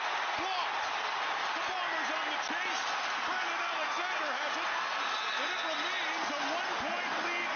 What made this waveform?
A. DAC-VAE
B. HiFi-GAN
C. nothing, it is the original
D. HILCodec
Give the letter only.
C